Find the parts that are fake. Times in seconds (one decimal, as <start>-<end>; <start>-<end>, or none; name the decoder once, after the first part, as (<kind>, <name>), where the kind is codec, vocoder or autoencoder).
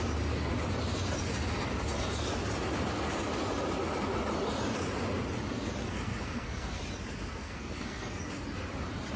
5.8-6.8 (codec, SNAC); 7.4-8.2